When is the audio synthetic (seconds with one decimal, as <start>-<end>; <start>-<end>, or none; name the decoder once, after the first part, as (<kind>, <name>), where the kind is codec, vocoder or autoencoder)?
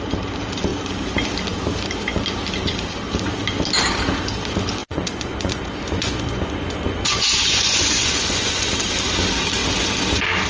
4.8-8.7 (vocoder, Vocos)